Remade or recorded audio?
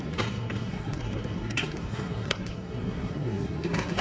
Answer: remade